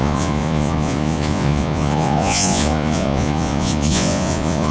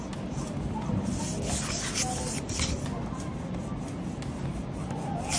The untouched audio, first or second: second